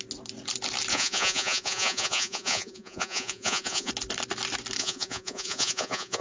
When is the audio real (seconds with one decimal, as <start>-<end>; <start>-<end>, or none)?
0.0-0.9; 3.9-4.8